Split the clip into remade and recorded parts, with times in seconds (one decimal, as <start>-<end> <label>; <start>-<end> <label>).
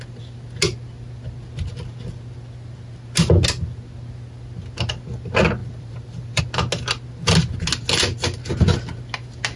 0.0-5.6 recorded; 5.6-6.4 remade; 6.4-9.6 recorded